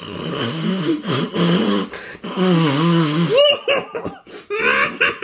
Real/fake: real